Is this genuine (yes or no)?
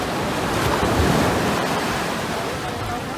yes